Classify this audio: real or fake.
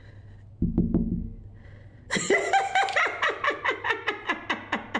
real